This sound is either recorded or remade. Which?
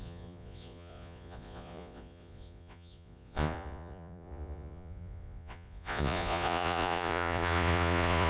remade